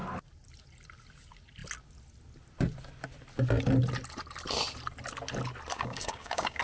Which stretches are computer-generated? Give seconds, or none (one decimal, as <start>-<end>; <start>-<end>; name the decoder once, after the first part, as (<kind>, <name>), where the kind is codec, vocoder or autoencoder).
5.7-6.6 (codec, DAC)